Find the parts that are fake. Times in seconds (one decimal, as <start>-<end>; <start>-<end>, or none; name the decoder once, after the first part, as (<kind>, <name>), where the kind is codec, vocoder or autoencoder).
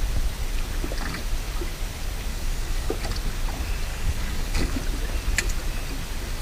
2.3-2.9 (codec, DAC); 3.9-4.8